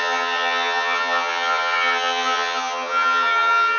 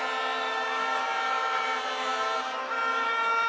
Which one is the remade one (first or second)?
first